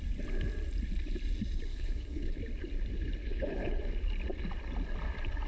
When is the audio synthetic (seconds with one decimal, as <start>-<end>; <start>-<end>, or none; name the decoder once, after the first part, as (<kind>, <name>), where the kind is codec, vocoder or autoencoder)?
1.7-2.4 (codec, HILCodec); 3.2-3.8